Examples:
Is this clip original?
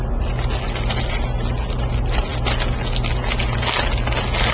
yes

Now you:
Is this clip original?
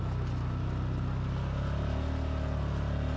yes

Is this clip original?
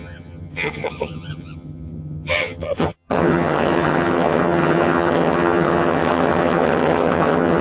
no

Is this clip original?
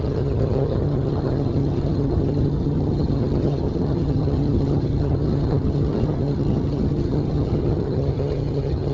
no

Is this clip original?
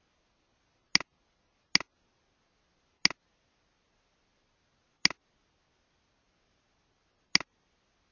yes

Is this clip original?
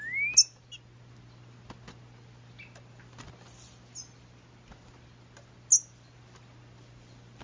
yes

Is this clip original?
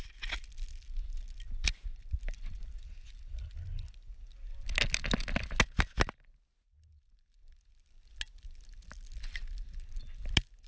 yes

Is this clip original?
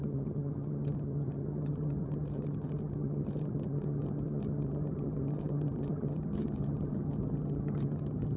no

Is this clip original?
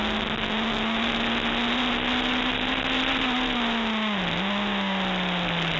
yes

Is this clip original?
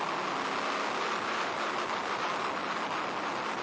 yes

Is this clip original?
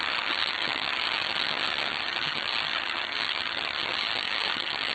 no